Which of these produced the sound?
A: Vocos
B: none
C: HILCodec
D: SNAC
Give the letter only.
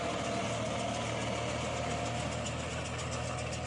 B